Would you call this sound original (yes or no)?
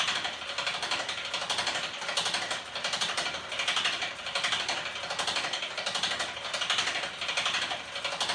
yes